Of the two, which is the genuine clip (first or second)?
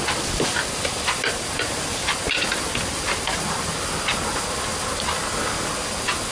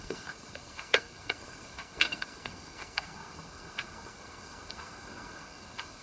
first